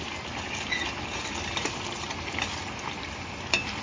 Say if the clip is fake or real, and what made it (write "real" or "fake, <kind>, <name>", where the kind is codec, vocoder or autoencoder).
real